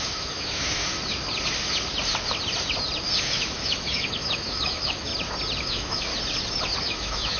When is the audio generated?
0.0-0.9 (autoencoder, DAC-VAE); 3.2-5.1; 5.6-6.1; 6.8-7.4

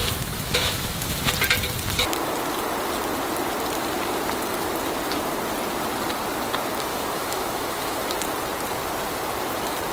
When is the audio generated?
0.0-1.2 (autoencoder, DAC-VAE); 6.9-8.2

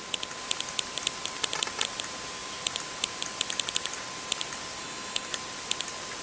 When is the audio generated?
4.8-5.3 (autoencoder, DAC-VAE)

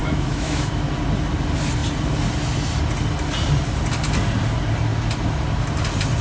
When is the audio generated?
0.0-0.7 (autoencoder, DAC-VAE)